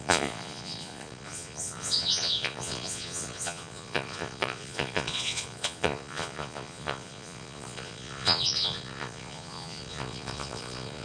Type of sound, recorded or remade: remade